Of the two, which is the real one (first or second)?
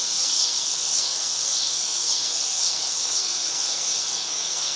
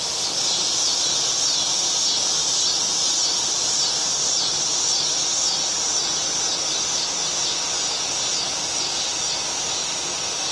second